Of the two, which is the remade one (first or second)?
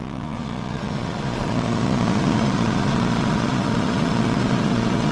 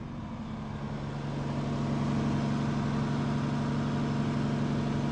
first